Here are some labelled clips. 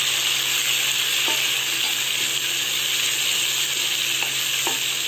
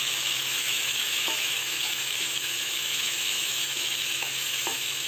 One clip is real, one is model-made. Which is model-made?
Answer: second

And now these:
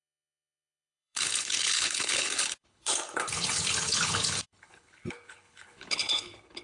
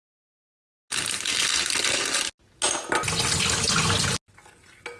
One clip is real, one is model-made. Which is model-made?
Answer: first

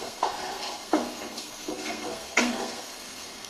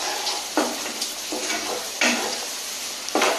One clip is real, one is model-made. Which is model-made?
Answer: first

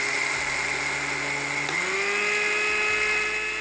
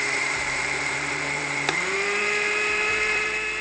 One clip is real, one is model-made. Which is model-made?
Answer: second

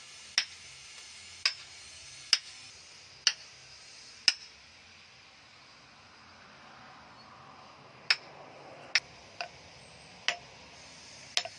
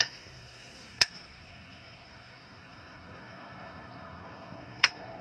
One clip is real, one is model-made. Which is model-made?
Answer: second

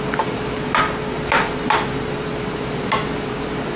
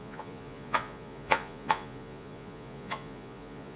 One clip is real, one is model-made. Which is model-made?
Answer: second